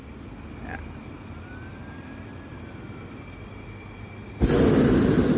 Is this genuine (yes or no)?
yes